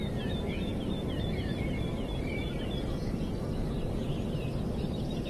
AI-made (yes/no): yes